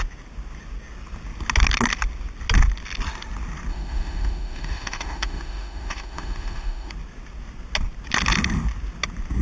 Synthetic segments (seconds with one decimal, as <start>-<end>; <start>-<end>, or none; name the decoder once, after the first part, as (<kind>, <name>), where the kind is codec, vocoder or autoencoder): 3.7-6.9 (autoencoder, DAC-VAE)